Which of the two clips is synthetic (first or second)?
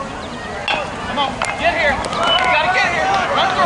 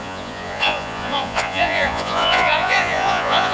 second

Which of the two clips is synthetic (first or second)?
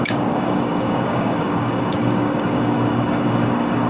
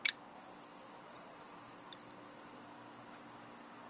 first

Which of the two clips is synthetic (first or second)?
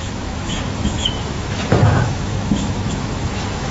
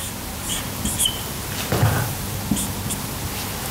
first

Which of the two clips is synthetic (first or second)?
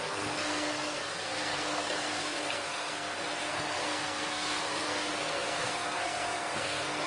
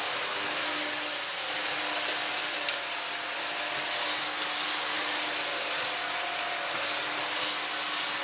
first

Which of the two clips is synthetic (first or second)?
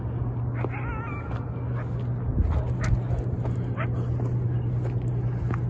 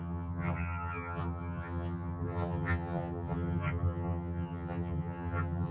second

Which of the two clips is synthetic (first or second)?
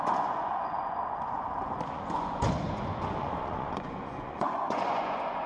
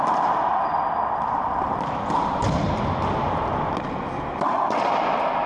first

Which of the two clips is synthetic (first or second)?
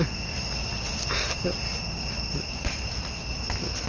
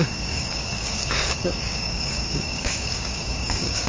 second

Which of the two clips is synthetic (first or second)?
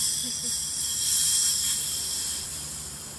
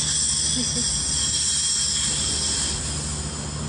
first